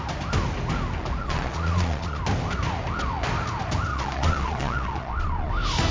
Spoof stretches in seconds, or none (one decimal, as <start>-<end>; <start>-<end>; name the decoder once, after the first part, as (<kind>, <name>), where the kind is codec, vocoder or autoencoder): 1.2-2.2 (vocoder, Vocos); 3.9-5.5